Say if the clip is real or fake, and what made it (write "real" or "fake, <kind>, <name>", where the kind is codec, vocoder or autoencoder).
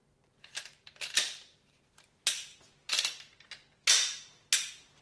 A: real